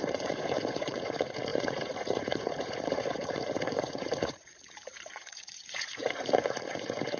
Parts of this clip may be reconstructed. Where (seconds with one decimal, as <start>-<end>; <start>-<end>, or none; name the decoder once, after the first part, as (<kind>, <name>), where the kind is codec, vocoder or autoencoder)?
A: 0.0-7.2 (vocoder, Vocos)